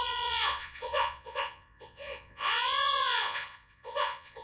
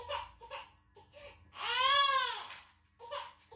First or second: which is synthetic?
first